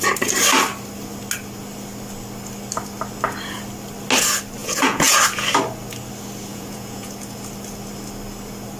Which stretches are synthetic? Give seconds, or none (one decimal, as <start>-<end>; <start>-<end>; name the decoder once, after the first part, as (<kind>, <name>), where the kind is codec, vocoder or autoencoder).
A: 4.6-5.2 (vocoder, Vocos); 6.5-7.1